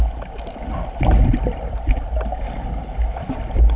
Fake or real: real